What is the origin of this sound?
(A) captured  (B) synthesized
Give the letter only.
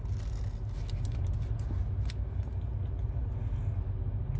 A